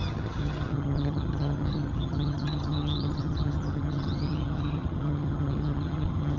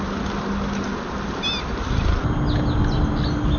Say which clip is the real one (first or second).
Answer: second